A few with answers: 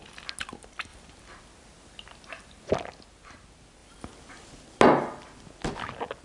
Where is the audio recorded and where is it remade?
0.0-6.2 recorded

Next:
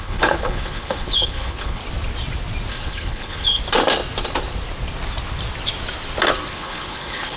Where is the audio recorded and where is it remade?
0.0-1.8 remade; 1.8-2.7 recorded; 2.7-3.6 remade; 3.6-6.5 recorded; 6.5-7.4 remade

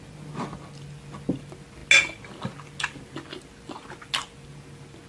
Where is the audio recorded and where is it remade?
0.0-5.1 recorded

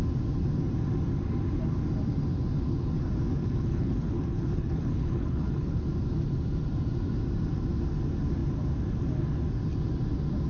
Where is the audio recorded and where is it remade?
0.0-3.4 recorded; 3.4-5.8 remade; 5.8-10.5 recorded

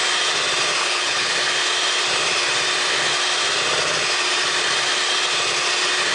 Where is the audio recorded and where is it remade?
0.0-0.8 recorded; 0.8-1.3 remade; 1.3-6.1 recorded

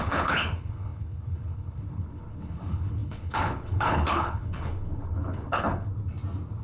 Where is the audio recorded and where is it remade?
0.0-5.9 remade; 5.9-6.6 recorded

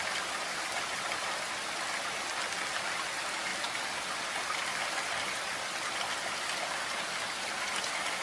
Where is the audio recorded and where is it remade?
0.0-8.2 recorded

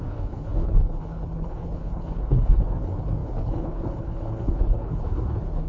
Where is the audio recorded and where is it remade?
0.0-5.7 remade